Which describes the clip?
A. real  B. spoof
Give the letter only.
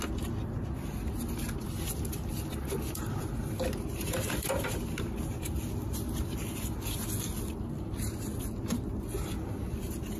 A